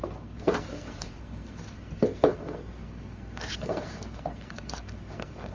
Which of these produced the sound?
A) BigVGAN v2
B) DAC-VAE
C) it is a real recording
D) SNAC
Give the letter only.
D